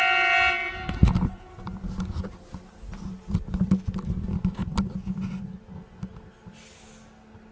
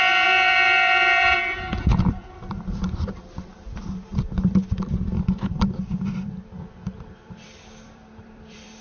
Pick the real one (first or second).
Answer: first